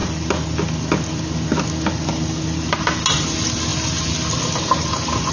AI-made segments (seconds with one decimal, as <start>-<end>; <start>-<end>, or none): none